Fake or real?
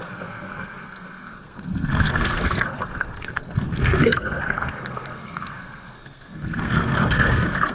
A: fake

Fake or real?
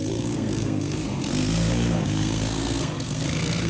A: fake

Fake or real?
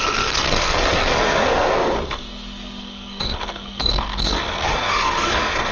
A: fake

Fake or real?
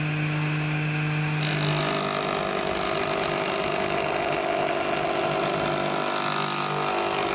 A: real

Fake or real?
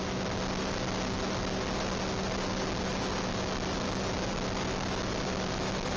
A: real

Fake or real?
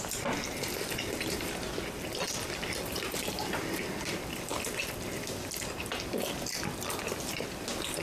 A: real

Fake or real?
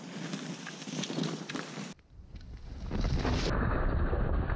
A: real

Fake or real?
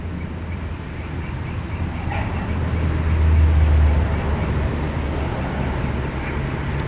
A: real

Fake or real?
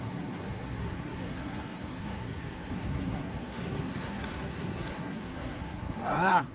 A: fake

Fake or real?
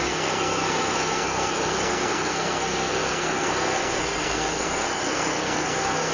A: fake